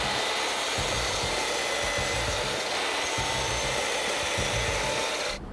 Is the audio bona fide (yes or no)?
yes